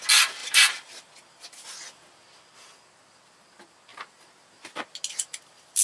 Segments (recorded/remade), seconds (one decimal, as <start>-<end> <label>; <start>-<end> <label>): 0.0-0.4 recorded; 0.4-1.0 remade; 1.0-3.9 recorded; 3.9-4.8 remade; 4.8-5.8 recorded